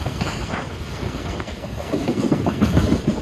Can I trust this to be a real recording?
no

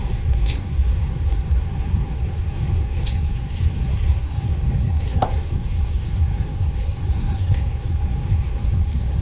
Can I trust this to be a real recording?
no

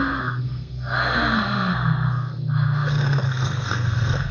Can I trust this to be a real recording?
no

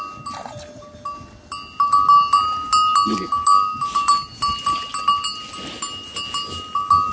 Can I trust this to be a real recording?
yes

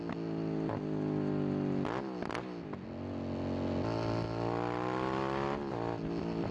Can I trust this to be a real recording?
yes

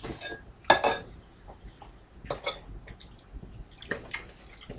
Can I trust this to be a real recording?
yes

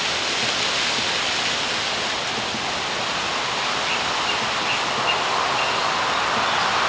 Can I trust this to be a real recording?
yes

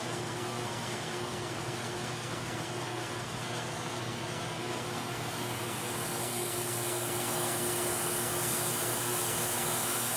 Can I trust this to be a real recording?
no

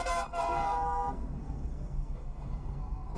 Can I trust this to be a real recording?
no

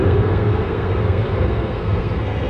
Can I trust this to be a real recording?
no